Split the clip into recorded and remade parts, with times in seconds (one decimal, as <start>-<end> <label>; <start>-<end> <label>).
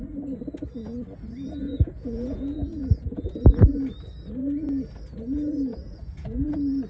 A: 0.0-1.7 recorded; 1.7-3.4 remade; 3.4-5.7 recorded; 5.7-6.5 remade; 6.5-6.9 recorded